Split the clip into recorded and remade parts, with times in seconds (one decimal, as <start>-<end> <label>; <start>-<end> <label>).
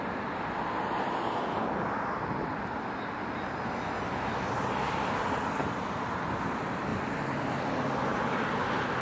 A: 0.0-9.0 recorded